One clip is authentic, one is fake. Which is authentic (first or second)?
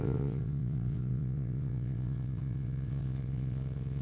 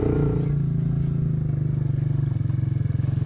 second